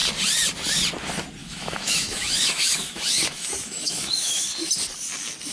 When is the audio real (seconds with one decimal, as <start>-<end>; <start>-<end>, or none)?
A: 0.0-1.4; 4.7-5.5